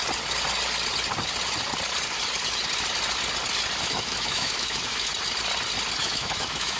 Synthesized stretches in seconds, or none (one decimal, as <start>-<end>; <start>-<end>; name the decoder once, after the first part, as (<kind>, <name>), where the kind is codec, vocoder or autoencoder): 3.8-5.1 (autoencoder, DAC-VAE); 6.0-6.8